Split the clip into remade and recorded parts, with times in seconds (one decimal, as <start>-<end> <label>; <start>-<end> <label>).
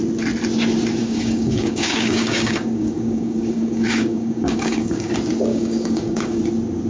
0.0-1.0 recorded; 1.0-5.1 remade; 5.1-5.5 recorded; 5.5-6.4 remade; 6.4-6.9 recorded